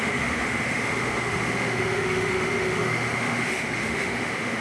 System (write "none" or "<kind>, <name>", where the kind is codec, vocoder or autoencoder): autoencoder, DAC-VAE